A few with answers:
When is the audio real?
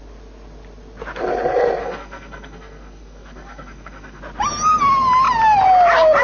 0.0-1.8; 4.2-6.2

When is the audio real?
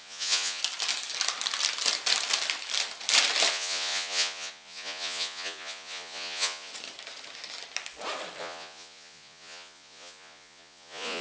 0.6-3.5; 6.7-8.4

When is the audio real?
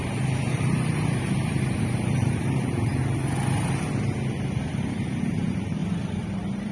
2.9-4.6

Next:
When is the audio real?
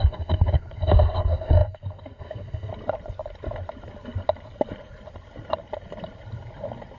2.7-7.0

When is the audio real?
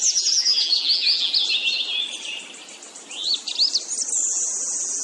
1.3-4.3